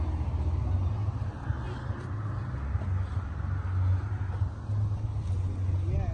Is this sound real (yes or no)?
yes